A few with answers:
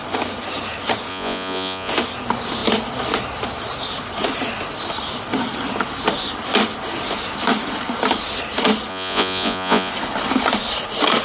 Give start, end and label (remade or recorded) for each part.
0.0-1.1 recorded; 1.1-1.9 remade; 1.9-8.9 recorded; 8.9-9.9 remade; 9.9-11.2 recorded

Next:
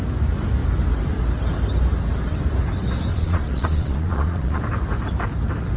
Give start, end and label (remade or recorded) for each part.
0.0-3.1 recorded; 3.1-4.6 remade; 4.6-5.8 recorded

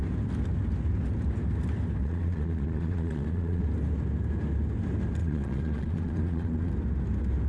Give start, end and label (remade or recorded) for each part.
0.0-2.0 recorded; 2.0-3.6 remade; 3.6-5.2 recorded; 5.2-6.7 remade; 6.7-7.5 recorded

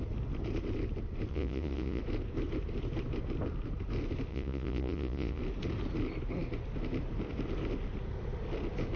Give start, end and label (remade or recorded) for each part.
0.0-1.3 recorded; 1.3-2.0 remade; 2.0-4.3 recorded; 4.3-5.4 remade; 5.4-9.0 recorded

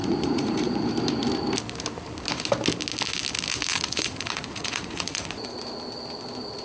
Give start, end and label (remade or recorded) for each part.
0.0-0.9 remade; 0.9-3.7 recorded; 3.7-5.6 remade; 5.6-6.6 recorded